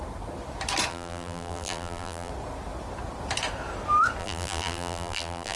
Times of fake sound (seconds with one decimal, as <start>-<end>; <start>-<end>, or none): 0.9-2.3; 4.2-5.6